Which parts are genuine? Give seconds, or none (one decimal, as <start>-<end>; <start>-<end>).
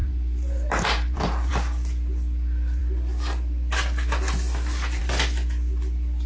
1.5-6.3